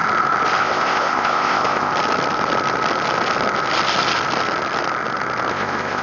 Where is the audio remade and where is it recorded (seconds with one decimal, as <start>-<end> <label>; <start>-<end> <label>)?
0.0-0.6 recorded; 0.6-1.9 remade; 1.9-5.5 recorded; 5.5-6.0 remade